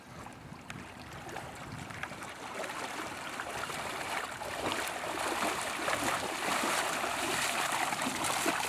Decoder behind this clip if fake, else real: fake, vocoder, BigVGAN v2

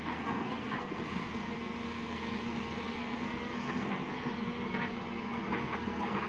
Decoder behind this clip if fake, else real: fake, codec, SNAC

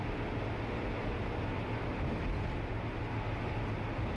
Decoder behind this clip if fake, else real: real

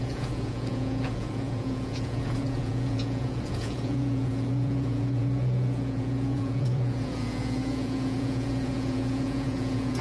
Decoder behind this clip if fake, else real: fake, vocoder, Vocos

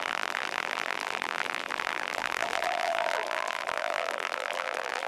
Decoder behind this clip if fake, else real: fake, vocoder, BigVGAN v2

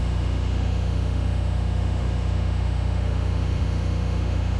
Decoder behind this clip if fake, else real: fake, autoencoder, DAC-VAE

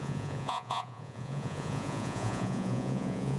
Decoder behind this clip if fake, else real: fake, vocoder, Vocos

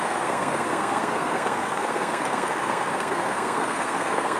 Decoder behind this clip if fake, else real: fake, codec, SNAC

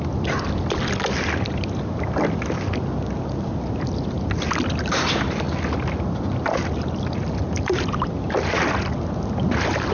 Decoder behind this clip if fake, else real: real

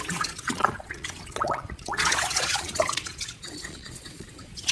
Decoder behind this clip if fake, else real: fake, vocoder, Vocos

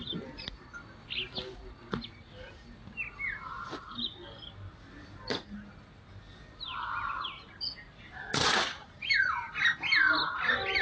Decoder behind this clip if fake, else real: real